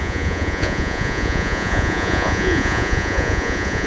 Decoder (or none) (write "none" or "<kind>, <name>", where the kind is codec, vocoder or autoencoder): vocoder, Vocos